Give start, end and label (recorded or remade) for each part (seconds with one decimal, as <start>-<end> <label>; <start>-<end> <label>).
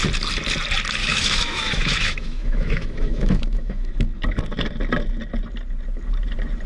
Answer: 0.0-1.0 recorded; 1.0-3.9 remade; 3.9-6.7 recorded